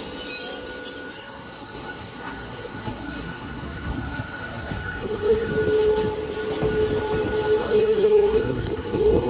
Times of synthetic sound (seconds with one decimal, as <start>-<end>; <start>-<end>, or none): 1.1-5.5; 7.6-9.3